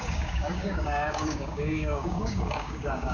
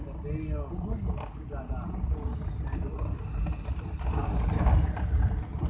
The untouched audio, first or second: second